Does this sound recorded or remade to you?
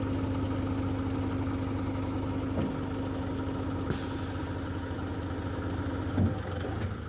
recorded